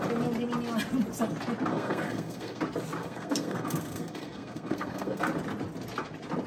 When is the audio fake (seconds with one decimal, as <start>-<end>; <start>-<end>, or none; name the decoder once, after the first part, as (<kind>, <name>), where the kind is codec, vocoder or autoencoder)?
1.7-2.6 (codec, SNAC); 3.0-5.2